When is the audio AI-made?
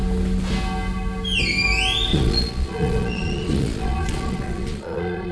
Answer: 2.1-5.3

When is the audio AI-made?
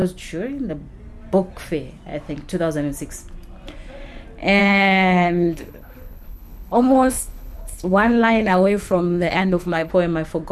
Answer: 4.6-9.9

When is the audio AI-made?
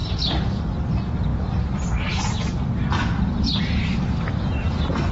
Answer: none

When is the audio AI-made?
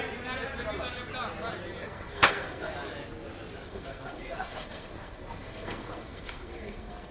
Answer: 1.8-2.7; 3.6-7.1